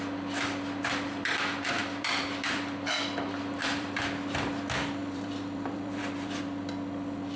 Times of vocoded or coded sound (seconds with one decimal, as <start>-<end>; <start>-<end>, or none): 1.8-4.0; 5.0-6.4